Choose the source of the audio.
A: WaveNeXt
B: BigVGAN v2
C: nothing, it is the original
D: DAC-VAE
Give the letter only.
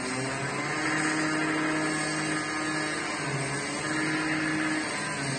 C